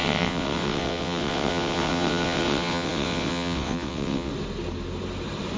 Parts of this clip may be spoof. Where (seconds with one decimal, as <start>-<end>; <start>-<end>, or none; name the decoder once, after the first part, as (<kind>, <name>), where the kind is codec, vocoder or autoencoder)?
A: 0.0-4.3 (vocoder, WaveNeXt)